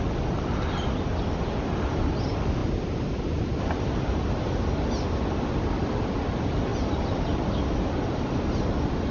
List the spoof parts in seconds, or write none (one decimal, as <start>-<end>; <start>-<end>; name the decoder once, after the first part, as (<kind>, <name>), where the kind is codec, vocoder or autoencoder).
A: none